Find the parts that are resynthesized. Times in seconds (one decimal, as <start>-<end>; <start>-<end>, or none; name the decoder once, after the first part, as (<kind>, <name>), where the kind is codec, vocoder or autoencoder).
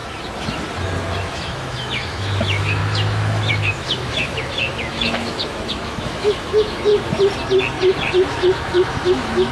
1.2-6.9 (autoencoder, DAC-VAE); 8.3-9.5